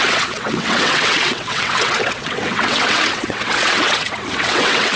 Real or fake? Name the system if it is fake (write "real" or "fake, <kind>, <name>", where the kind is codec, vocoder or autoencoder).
fake, vocoder, WaveNeXt